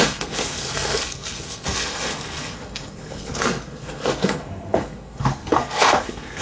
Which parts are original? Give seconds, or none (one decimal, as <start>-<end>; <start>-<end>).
none